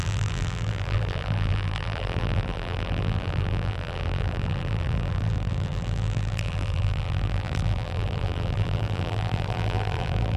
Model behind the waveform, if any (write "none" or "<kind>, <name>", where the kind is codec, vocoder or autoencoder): vocoder, BigVGAN v2